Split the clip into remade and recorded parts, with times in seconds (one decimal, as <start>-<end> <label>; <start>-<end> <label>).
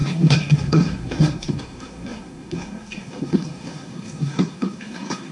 0.0-5.3 remade